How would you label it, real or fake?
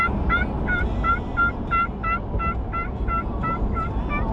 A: real